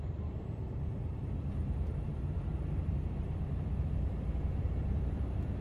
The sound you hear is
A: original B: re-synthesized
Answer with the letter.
B